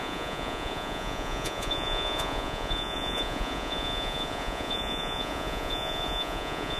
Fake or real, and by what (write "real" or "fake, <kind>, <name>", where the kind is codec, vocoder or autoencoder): fake, vocoder, Vocos